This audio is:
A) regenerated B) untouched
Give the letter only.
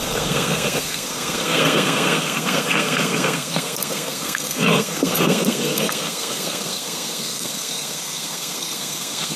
A